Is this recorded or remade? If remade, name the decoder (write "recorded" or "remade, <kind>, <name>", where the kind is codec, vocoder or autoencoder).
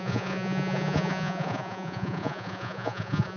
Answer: remade, vocoder, Vocos